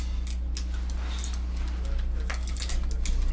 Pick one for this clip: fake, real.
real